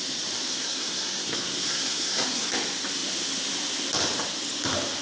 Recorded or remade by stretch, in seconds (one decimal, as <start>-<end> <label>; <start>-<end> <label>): 0.0-0.5 recorded; 0.5-2.5 remade; 2.5-5.0 recorded